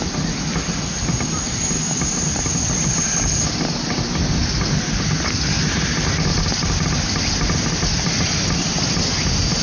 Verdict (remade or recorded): recorded